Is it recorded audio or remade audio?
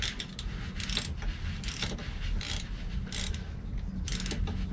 recorded